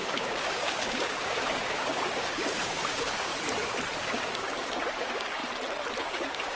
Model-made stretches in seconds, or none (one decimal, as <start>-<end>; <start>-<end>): 0.0-3.3; 4.0-5.4; 6.0-6.6